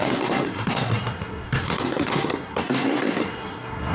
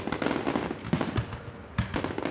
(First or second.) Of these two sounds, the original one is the second